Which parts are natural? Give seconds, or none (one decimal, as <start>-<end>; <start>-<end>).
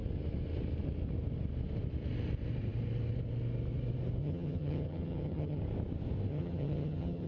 0.0-4.2; 5.6-6.3